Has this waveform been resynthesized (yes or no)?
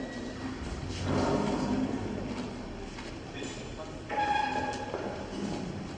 no